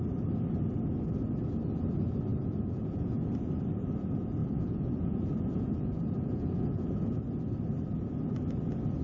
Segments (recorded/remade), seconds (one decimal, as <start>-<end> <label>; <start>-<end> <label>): 0.0-2.3 recorded; 2.3-3.3 remade; 3.3-4.4 recorded; 4.4-7.2 remade; 7.2-9.0 recorded